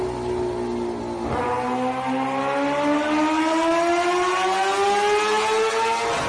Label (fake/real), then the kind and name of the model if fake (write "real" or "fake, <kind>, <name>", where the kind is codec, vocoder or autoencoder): real